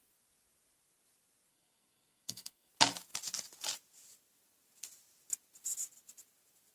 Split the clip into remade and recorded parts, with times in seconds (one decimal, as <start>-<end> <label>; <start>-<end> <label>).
0.0-1.5 recorded; 1.5-2.7 remade; 2.7-6.7 recorded